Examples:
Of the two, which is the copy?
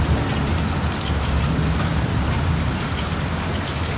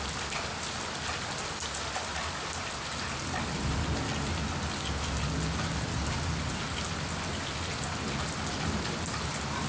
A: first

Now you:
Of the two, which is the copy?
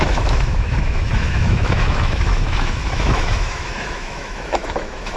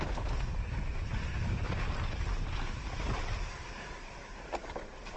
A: first